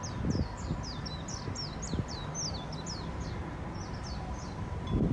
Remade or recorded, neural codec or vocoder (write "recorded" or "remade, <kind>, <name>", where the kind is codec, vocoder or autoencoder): recorded